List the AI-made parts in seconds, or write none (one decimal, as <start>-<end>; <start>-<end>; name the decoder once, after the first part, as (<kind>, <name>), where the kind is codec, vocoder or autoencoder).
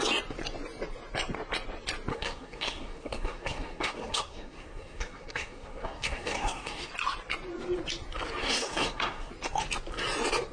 2.1-6.9 (codec, SNAC); 8.4-9.3